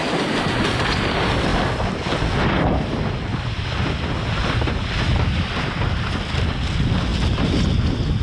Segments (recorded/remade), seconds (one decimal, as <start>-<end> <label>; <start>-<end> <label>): 0.0-8.2 recorded